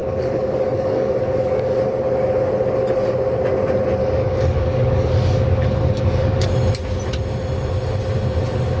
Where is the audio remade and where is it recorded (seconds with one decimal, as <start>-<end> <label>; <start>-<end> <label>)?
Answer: 0.0-1.8 remade; 1.8-4.0 recorded; 4.0-6.5 remade; 6.5-8.8 recorded

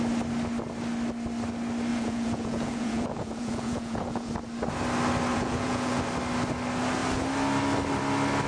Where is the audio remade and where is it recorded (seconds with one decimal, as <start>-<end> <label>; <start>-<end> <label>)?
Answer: 0.0-1.9 recorded; 1.9-4.3 remade; 4.3-5.3 recorded; 5.3-6.0 remade; 6.0-8.5 recorded

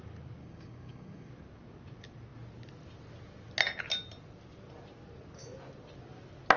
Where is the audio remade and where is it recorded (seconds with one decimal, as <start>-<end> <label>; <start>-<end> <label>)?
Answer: 0.0-0.4 recorded; 0.4-1.3 remade; 1.3-6.6 recorded

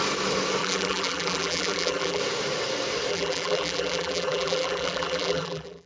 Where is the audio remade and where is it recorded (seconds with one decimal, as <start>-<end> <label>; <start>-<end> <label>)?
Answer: 0.0-0.6 recorded; 0.6-2.2 remade; 2.2-3.1 recorded; 3.1-5.9 remade

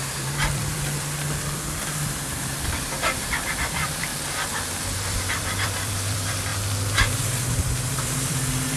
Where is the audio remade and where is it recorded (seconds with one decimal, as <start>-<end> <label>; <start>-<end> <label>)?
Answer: 0.0-4.1 remade; 4.1-5.2 recorded; 5.2-6.5 remade; 6.5-7.1 recorded; 7.1-8.8 remade